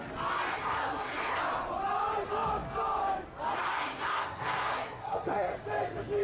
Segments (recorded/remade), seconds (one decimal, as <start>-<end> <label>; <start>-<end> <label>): 0.0-0.5 recorded; 0.5-1.4 remade; 1.4-3.7 recorded; 3.7-5.5 remade; 5.5-6.2 recorded